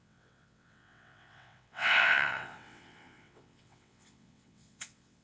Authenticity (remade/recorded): remade